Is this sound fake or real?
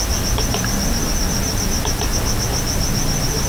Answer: real